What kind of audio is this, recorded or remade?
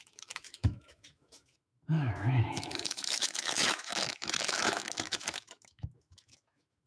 remade